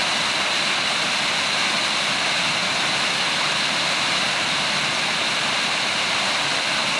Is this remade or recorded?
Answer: recorded